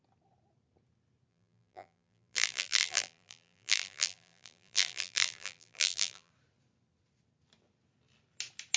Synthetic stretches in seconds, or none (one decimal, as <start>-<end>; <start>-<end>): 1.3-6.3

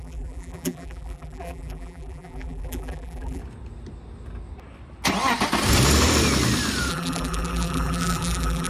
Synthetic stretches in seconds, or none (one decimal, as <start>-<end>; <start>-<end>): 0.0-3.4; 6.9-8.7

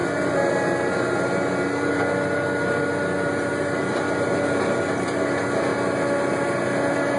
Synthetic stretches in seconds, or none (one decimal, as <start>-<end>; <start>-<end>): none

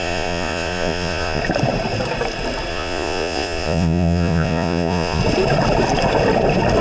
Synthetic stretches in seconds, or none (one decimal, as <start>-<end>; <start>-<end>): 0.0-1.4; 2.7-5.2

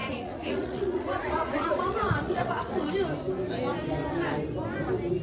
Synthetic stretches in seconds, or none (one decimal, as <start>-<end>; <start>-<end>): 0.0-2.9

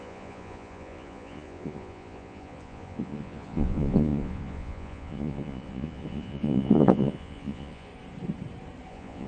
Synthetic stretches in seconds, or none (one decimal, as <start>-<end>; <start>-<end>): 0.0-7.9; 8.9-9.3